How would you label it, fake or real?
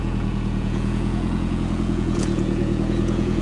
fake